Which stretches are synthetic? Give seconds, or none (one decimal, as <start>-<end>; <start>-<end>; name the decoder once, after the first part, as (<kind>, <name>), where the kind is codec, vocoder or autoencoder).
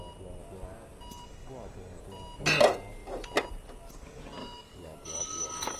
4.4-5.8 (codec, DAC)